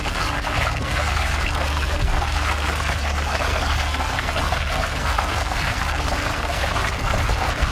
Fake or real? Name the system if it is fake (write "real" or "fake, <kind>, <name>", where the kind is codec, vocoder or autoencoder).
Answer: fake, codec, SNAC